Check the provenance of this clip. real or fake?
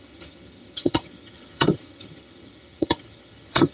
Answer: fake